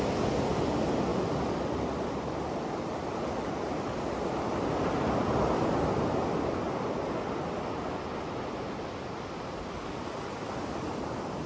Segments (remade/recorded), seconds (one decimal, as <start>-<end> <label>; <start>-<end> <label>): 0.0-1.1 recorded; 1.1-4.7 remade; 4.7-11.5 recorded